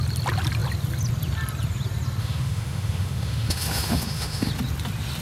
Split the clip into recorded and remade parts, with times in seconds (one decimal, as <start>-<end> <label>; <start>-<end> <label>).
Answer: 0.0-2.2 recorded; 2.2-4.5 remade; 4.5-5.2 recorded